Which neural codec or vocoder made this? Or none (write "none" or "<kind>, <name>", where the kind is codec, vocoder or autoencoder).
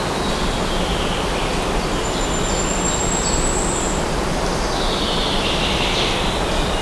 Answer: none